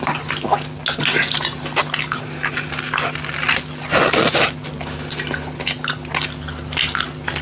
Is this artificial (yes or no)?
no